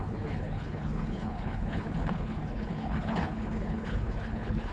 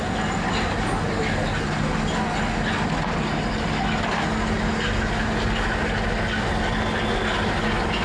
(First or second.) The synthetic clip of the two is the first